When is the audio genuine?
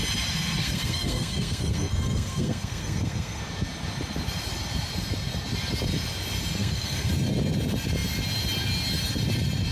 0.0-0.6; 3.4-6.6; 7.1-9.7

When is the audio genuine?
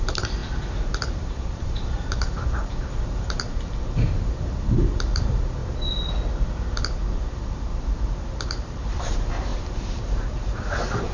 0.4-1.1; 5.6-7.1